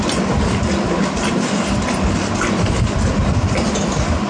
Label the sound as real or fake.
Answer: real